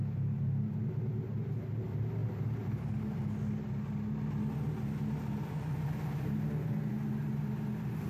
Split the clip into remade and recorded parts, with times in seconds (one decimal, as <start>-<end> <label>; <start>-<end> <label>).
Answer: 0.0-8.1 recorded